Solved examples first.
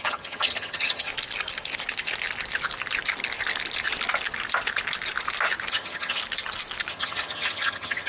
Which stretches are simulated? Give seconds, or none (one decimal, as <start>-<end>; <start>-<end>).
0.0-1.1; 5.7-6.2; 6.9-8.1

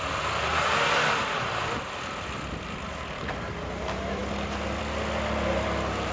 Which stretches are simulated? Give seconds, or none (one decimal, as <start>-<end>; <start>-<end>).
1.2-3.3

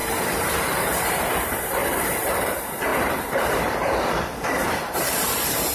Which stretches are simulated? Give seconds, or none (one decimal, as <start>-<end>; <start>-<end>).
0.7-2.9; 3.4-5.7

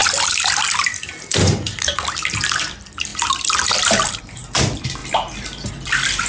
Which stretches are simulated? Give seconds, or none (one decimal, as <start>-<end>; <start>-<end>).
1.2-5.0; 5.7-6.3

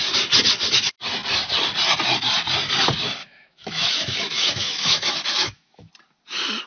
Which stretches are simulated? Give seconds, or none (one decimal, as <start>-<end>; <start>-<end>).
3.2-5.9

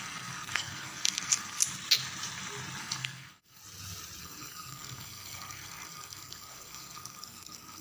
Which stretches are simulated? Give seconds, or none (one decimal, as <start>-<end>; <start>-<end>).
0.0-1.6; 2.8-3.6; 4.2-7.8